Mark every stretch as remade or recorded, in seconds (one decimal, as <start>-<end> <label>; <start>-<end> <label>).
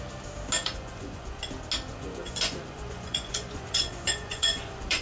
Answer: 0.0-0.6 recorded; 0.6-1.4 remade; 1.4-1.9 recorded; 1.9-5.0 remade